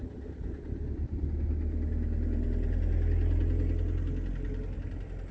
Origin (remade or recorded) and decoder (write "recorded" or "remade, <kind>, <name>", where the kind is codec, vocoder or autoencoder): recorded